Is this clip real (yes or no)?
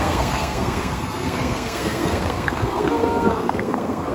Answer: no